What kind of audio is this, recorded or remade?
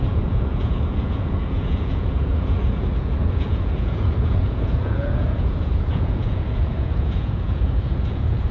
remade